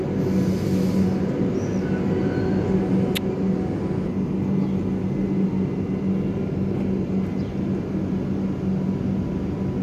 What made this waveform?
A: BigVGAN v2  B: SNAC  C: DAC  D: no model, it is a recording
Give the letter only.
D